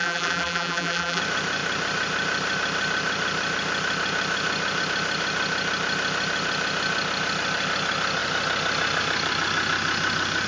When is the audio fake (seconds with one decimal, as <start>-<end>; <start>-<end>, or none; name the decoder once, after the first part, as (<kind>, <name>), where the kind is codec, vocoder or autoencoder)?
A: 0.0-1.2 (vocoder, BigVGAN v2)